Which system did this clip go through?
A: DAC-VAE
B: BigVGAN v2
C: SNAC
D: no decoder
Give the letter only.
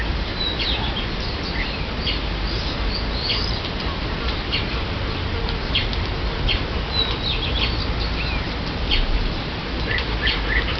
D